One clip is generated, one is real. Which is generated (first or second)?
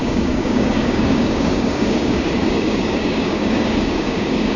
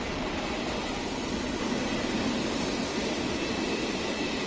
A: first